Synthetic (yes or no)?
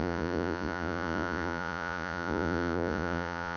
yes